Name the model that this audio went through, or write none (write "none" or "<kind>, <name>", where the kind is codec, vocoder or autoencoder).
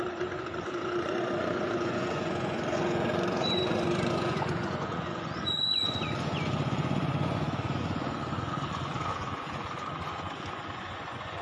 vocoder, Vocos